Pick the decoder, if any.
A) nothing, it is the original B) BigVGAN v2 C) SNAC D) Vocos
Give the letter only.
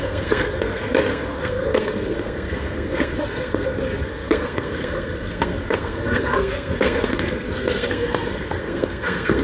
C